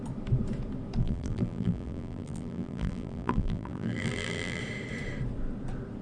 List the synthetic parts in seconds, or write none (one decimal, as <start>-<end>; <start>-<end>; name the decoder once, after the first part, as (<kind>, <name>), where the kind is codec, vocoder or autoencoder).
1.0-4.6 (vocoder, BigVGAN v2)